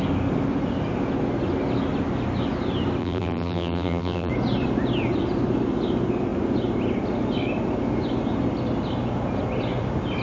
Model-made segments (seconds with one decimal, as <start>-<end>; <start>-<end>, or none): 3.0-4.3